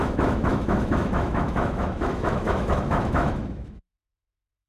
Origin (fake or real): fake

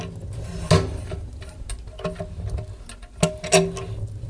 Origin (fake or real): real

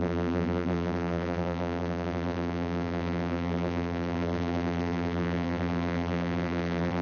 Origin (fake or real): fake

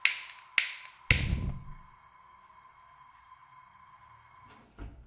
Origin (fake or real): real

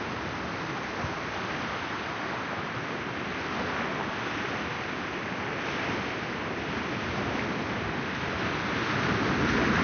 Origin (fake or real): real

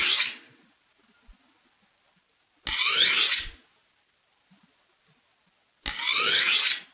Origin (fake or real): real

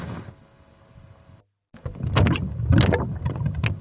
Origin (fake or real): real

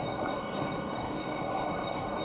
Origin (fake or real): fake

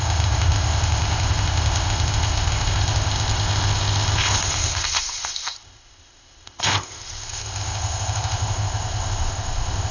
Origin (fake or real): fake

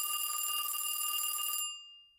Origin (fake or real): real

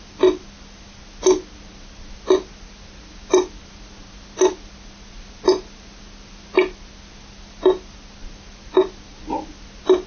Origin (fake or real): real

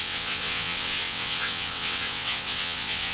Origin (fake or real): fake